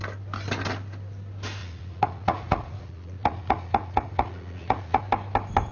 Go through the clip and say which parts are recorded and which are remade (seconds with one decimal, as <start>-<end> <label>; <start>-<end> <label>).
0.0-1.6 recorded; 1.6-5.0 remade; 5.0-5.7 recorded